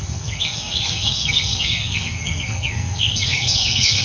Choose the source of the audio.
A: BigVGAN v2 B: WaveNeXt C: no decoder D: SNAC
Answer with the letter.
D